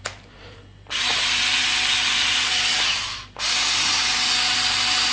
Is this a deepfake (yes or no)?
no